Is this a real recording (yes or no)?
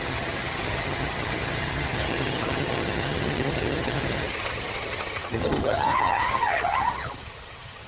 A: no